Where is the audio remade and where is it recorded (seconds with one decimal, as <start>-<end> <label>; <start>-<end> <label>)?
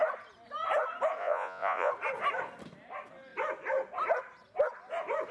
0.0-1.2 recorded; 1.2-1.9 remade; 1.9-5.3 recorded